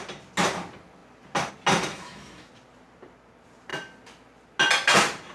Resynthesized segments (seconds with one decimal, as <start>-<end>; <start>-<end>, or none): 1.9-2.5